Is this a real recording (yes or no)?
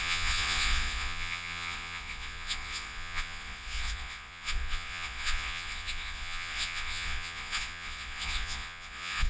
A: no